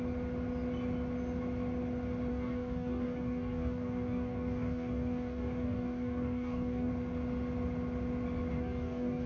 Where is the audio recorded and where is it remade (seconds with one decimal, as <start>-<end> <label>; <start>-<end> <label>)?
0.0-2.3 recorded; 2.3-6.9 remade; 6.9-8.5 recorded; 8.5-9.3 remade